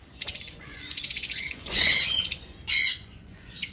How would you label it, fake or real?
fake